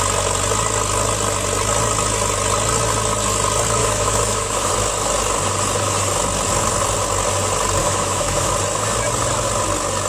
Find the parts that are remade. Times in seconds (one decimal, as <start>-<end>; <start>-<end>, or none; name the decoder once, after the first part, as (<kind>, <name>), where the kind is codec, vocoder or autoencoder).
3.8-4.7 (autoencoder, DAC-VAE); 7.8-8.5